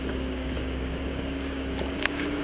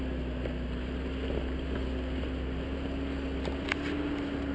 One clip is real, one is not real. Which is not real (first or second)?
first